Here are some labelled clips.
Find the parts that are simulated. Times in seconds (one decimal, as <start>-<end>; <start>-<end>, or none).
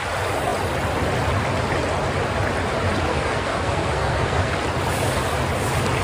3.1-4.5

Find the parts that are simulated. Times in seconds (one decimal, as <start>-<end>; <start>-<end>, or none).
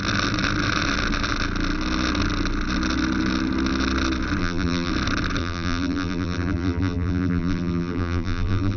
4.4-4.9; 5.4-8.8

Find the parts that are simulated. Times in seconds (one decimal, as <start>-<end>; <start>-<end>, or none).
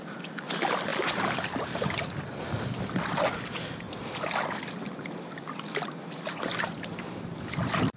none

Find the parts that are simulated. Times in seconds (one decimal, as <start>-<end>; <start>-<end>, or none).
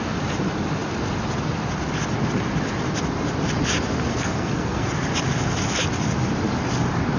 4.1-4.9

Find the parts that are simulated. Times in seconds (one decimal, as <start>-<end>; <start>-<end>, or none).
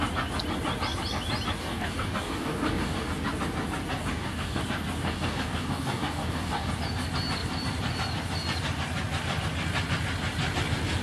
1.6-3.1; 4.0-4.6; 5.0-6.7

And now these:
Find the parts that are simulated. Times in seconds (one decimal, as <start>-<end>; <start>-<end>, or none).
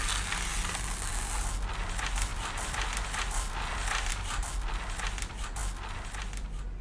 none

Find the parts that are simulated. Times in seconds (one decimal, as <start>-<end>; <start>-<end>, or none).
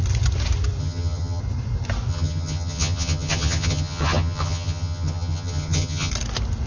0.8-1.4; 2.1-6.1